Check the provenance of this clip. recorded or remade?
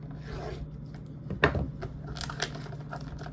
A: recorded